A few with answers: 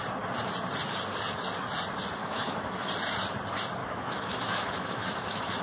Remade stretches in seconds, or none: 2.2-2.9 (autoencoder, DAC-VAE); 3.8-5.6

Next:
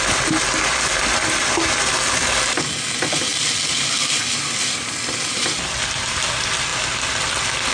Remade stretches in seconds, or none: none

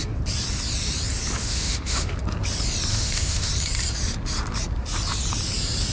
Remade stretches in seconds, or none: 1.4-2.1 (autoencoder, DAC-VAE); 2.9-3.5

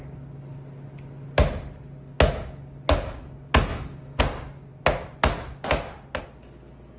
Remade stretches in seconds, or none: 3.7-4.2 (autoencoder, DAC-VAE)

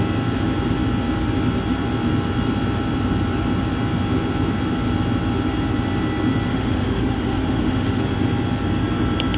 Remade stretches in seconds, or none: 6.5-8.0 (autoencoder, DAC-VAE)

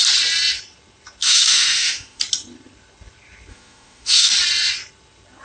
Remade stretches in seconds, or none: 1.2-2.2 (autoencoder, DAC-VAE); 3.5-4.3

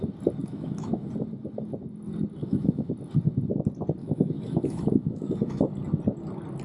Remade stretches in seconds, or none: 0.4-1.1 (autoencoder, DAC-VAE); 2.4-2.9; 4.0-5.7